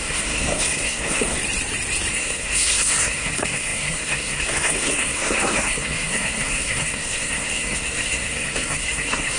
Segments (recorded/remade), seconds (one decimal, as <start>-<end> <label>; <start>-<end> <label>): 0.0-1.4 remade; 1.4-2.1 recorded; 2.1-9.4 remade